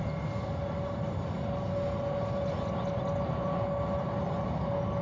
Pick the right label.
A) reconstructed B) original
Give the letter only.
B